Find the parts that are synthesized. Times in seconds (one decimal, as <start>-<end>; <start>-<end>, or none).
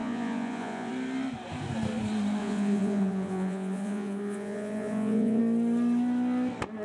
0.0-0.9; 2.4-5.4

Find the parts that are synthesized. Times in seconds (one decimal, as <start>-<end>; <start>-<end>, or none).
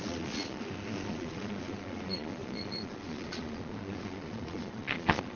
0.0-5.4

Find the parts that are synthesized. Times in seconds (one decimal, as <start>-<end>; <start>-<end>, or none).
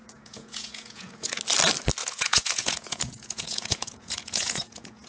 0.0-1.4; 2.0-5.1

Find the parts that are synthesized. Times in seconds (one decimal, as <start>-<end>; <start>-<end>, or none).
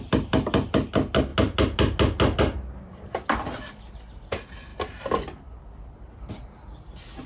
none